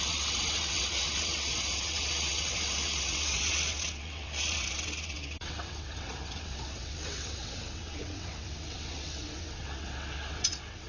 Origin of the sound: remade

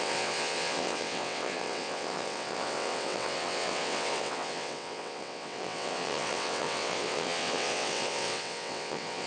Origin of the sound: remade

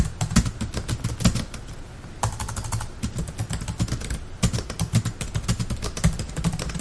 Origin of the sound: recorded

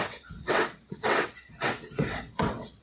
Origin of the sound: remade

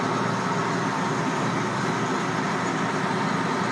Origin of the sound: recorded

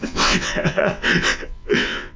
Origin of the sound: remade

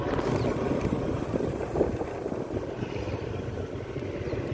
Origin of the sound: recorded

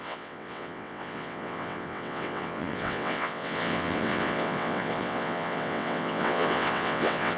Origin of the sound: remade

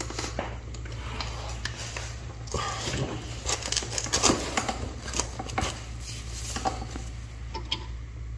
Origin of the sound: recorded